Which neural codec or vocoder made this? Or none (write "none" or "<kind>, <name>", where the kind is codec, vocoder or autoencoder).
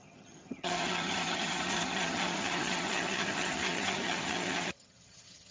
vocoder, HiFi-GAN